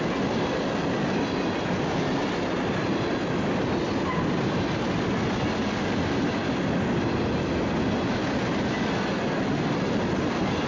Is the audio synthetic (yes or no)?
no